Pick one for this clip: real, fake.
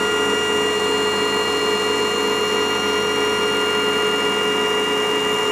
real